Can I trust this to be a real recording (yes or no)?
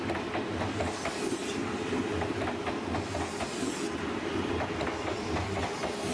yes